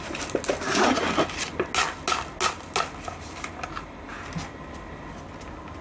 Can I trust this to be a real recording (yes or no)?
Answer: yes